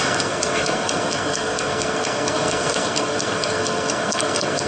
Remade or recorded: remade